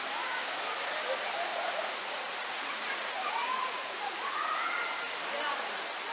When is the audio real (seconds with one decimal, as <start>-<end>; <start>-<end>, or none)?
0.0-1.5; 4.8-6.1